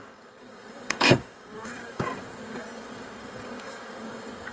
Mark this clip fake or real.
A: fake